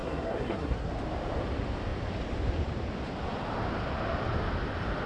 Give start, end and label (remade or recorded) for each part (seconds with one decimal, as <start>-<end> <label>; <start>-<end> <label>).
0.0-0.9 remade; 0.9-5.1 recorded